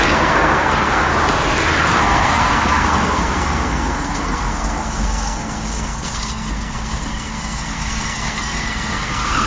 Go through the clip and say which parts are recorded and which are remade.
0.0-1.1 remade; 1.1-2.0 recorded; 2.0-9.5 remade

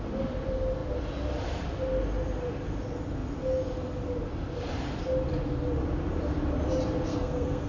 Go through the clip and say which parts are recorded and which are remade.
0.0-7.1 recorded; 7.1-7.7 remade

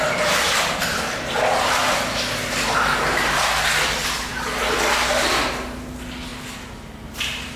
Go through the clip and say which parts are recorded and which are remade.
0.0-7.6 recorded

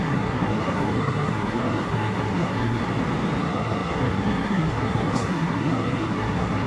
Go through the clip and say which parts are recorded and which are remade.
0.0-2.8 remade; 2.8-3.4 recorded; 3.4-6.7 remade

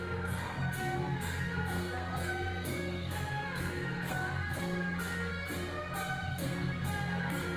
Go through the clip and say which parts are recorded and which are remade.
0.0-5.3 remade; 5.3-6.3 recorded; 6.3-7.6 remade

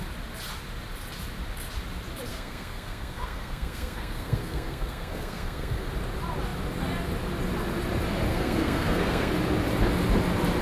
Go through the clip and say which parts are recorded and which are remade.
0.0-2.3 recorded; 2.3-5.9 remade; 5.9-8.3 recorded; 8.3-9.3 remade; 9.3-10.6 recorded